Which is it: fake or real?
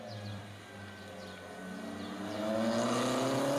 real